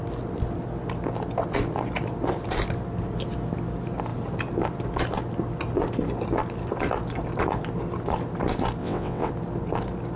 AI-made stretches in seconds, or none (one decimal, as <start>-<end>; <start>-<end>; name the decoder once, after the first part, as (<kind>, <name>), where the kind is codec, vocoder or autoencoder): 8.8-9.3 (vocoder, WaveNeXt)